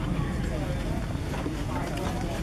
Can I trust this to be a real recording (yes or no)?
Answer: yes